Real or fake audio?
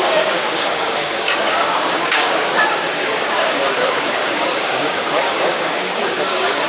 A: fake